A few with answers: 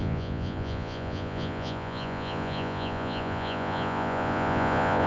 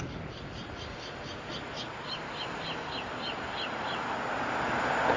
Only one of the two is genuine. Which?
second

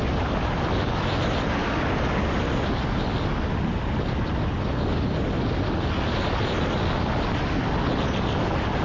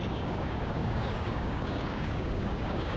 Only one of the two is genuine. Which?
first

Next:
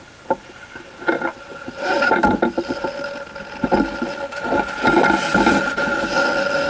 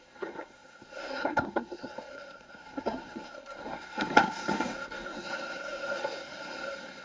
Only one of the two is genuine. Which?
first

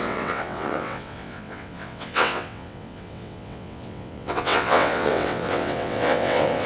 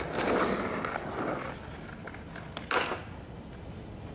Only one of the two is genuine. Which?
second